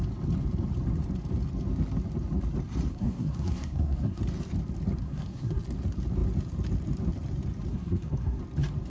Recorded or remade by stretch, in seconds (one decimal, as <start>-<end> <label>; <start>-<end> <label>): 0.0-2.9 recorded; 2.9-4.2 remade; 4.2-5.0 recorded; 5.0-5.6 remade; 5.6-7.7 recorded; 7.7-8.4 remade; 8.4-8.9 recorded